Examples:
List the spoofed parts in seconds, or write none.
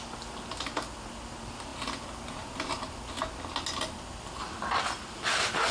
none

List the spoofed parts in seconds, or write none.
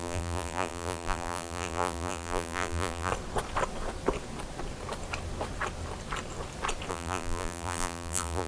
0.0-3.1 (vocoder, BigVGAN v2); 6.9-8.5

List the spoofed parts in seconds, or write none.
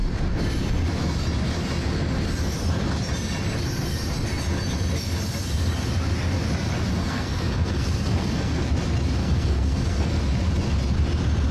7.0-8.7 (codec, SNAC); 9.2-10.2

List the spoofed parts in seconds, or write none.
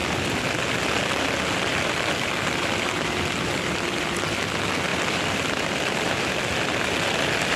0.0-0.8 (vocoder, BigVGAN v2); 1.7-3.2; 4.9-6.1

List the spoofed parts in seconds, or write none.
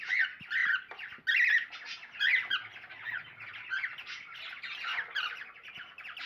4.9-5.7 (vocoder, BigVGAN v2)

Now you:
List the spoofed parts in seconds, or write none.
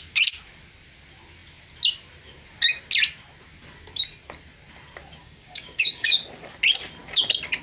5.2-6.2 (codec, DAC)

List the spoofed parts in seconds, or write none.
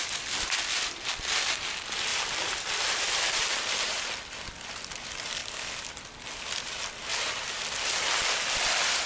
2.1-4.1 (vocoder, BigVGAN v2); 7.1-7.6